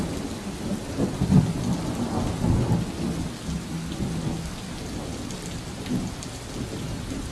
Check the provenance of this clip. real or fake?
real